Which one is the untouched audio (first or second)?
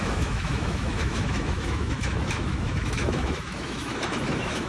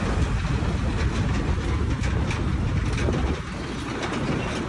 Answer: second